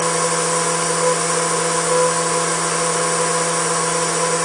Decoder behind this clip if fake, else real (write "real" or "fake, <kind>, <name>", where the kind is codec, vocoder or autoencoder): real